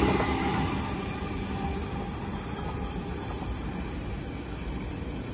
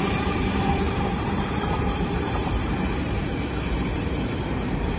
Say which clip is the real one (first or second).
first